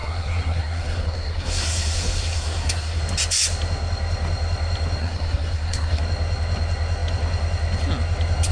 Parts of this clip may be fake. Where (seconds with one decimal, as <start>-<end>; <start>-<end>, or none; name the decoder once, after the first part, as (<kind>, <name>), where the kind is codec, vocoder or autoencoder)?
0.0-3.0 (codec, SNAC); 5.0-6.0